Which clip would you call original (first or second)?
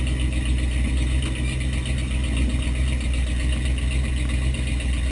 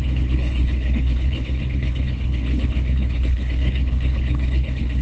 first